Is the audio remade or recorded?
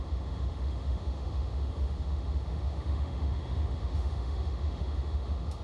remade